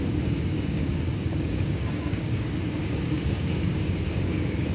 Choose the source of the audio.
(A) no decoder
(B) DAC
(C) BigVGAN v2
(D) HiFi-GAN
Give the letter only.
B